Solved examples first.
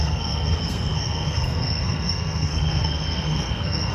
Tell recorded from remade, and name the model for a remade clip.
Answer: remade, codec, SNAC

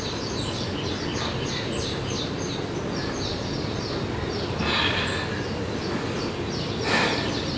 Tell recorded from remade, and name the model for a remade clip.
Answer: recorded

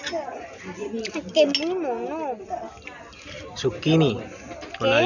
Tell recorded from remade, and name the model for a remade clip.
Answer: recorded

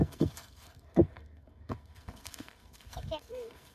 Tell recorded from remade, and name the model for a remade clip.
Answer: remade, codec, SNAC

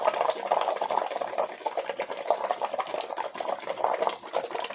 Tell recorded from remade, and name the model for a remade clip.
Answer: recorded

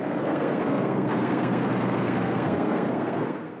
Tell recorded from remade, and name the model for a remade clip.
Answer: remade, codec, SNAC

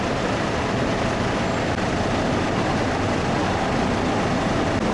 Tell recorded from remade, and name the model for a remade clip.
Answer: recorded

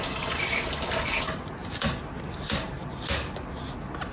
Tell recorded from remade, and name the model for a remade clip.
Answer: recorded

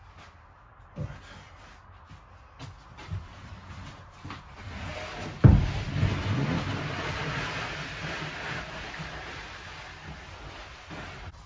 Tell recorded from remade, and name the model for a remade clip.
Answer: recorded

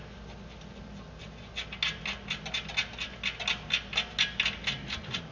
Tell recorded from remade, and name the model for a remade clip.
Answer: recorded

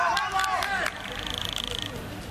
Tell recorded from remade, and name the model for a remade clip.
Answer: recorded